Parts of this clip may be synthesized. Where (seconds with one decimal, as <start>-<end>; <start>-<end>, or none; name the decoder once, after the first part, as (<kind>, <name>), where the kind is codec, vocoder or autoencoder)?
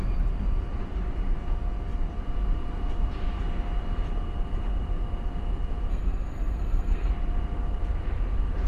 5.9-7.1 (codec, SNAC)